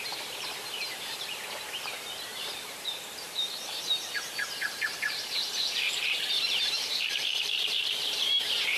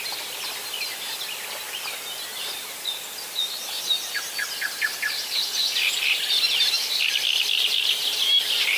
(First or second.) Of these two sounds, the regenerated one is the first